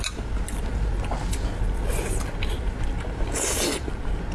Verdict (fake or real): fake